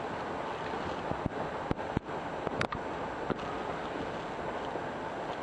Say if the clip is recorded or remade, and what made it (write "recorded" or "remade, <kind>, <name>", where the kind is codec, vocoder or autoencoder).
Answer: recorded